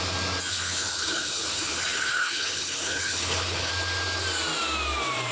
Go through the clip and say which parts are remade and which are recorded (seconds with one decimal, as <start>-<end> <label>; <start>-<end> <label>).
0.0-0.5 recorded; 0.5-3.7 remade; 3.7-5.3 recorded